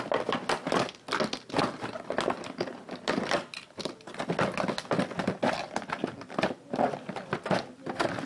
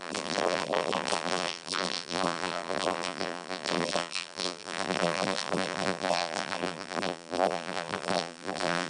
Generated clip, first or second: second